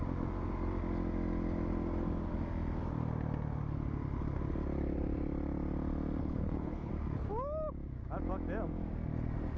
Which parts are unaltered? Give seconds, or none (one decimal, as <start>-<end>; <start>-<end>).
0.0-6.2; 6.9-9.6